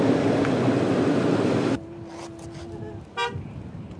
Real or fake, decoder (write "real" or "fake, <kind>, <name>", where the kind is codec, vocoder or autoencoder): real